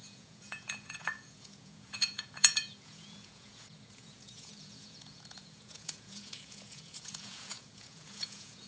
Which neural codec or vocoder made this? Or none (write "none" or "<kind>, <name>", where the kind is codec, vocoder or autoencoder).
vocoder, Vocos